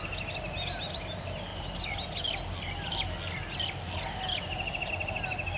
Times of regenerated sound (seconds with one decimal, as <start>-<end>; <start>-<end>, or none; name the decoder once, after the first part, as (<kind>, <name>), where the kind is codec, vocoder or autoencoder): none

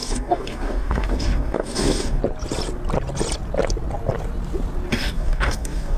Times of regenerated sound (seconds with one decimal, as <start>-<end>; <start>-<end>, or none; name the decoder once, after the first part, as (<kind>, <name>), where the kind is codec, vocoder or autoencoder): 0.0-2.2 (codec, DAC); 4.9-6.0

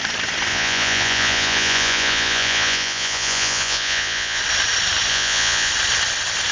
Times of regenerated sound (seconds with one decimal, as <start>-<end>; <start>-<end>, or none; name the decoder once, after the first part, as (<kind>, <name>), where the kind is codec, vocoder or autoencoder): 0.5-4.4 (vocoder, Vocos); 5.1-5.7

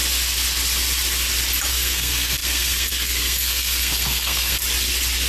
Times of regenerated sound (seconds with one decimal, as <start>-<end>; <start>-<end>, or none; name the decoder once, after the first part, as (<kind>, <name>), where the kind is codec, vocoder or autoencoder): 1.7-4.6 (codec, SNAC)